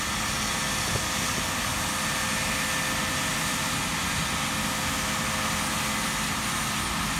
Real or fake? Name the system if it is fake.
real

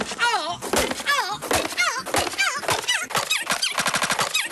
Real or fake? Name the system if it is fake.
real